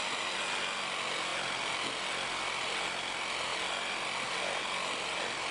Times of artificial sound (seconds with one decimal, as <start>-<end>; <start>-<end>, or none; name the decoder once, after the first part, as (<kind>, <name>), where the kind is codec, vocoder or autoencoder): none